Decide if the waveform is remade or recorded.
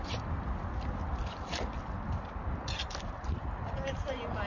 recorded